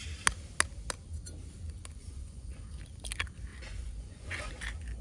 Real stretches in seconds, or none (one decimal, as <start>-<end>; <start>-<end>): 0.0-2.0; 2.8-3.5; 4.5-5.0